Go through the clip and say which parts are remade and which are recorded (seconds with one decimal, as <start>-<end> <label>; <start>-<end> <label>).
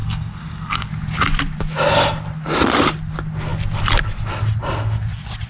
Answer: 0.0-0.9 remade; 0.9-5.5 recorded